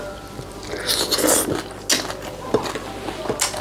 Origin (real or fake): real